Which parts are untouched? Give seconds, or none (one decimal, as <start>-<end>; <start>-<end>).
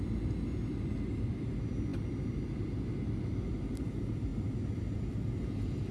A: 0.0-5.9